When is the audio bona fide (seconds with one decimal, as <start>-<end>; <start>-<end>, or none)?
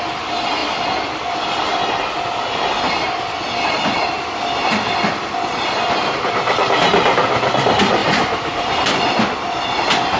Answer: 0.0-8.0; 9.0-10.2